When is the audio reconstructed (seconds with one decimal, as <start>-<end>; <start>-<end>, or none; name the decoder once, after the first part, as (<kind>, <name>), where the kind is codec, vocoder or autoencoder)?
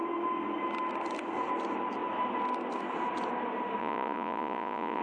3.8-5.0 (vocoder, Vocos)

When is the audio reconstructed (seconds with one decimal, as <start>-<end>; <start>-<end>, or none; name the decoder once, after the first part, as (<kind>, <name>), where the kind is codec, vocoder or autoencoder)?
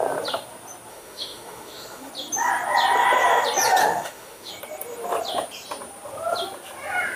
0.9-2.1 (autoencoder, DAC-VAE); 3.8-4.5